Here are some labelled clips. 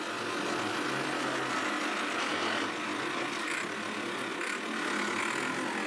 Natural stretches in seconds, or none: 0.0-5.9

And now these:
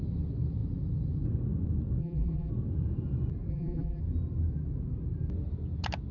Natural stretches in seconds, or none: 0.0-2.0; 2.5-3.5; 4.0-6.1